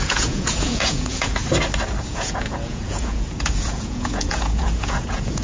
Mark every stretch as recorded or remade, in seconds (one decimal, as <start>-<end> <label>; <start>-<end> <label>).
0.0-1.4 remade; 1.4-2.0 recorded; 2.0-5.4 remade